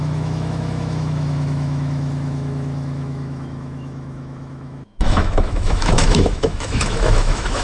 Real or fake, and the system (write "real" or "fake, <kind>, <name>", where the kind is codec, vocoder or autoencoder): fake, autoencoder, DAC-VAE